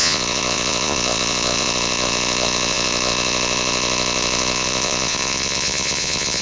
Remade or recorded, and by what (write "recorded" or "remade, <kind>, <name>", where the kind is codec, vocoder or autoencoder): remade, vocoder, Vocos